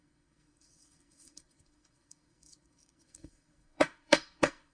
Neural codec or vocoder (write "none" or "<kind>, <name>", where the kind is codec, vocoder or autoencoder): codec, SNAC